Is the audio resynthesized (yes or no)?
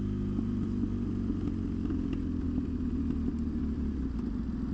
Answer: no